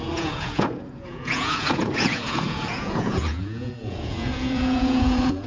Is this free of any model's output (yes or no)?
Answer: no